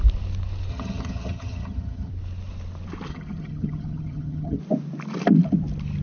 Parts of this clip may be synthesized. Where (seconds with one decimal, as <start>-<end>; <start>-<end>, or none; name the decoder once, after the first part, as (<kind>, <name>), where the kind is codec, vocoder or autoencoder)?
0.7-2.1 (vocoder, HiFi-GAN); 3.1-4.6